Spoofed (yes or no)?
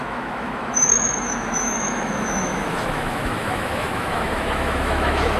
yes